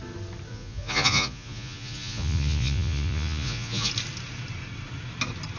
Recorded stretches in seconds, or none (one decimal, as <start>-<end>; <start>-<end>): 0.0-0.5; 3.9-5.6